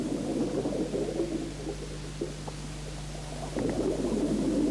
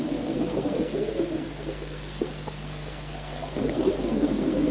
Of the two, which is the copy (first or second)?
second